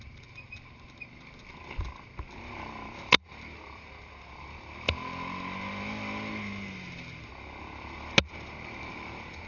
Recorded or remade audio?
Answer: recorded